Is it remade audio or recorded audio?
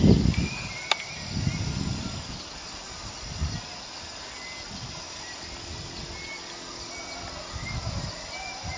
recorded